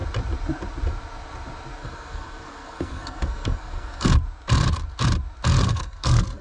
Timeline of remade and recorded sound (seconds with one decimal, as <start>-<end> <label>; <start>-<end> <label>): 0.0-1.8 recorded; 1.8-4.1 remade; 4.1-5.6 recorded; 5.6-6.4 remade